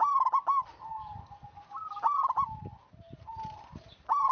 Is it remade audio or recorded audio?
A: recorded